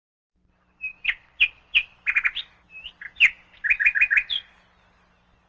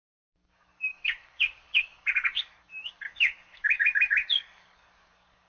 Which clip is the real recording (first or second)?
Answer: first